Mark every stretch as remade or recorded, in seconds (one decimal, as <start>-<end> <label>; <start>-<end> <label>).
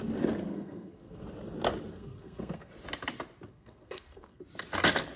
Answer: 0.0-0.5 recorded; 0.5-1.2 remade; 1.2-1.9 recorded; 1.9-2.7 remade; 2.7-3.5 recorded; 3.5-4.4 remade; 4.4-5.2 recorded